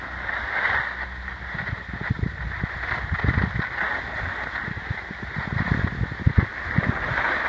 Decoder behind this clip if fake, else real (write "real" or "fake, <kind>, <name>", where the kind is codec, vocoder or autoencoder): real